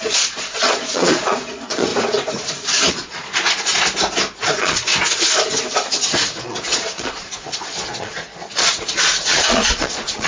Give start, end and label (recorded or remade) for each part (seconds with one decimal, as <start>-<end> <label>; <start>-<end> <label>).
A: 0.0-1.9 remade; 1.9-2.9 recorded; 2.9-3.7 remade; 3.7-4.5 recorded; 4.5-4.9 remade; 4.9-6.4 recorded; 6.4-10.3 remade